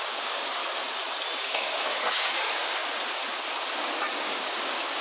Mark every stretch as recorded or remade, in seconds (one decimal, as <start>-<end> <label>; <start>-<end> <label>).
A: 0.0-0.6 remade; 0.6-1.4 recorded; 1.4-2.8 remade; 2.8-4.2 recorded; 4.2-5.0 remade